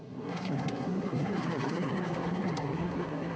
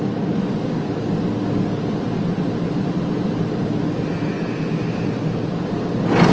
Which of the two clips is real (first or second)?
second